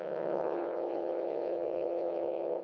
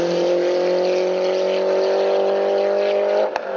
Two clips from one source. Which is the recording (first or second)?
second